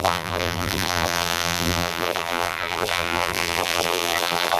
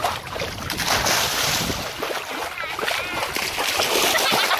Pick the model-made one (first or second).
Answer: first